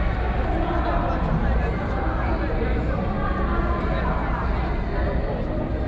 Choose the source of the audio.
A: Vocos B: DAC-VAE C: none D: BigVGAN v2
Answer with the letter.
C